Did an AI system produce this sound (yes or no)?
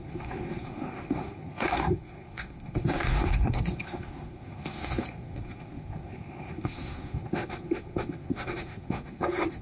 yes